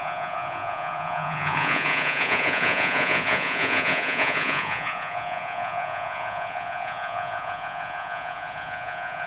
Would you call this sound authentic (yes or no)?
no